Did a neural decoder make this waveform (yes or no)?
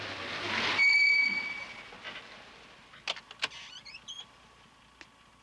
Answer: no